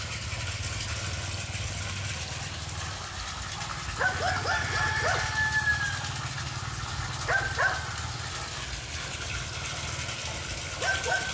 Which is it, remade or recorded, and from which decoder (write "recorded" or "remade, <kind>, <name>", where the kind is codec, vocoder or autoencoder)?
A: recorded